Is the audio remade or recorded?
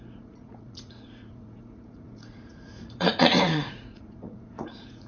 remade